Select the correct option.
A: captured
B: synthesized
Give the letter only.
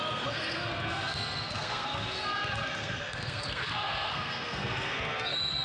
B